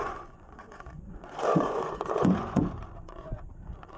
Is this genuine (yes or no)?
no